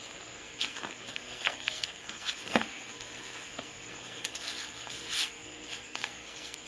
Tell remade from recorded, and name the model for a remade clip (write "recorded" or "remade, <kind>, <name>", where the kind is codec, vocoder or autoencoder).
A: remade, codec, SNAC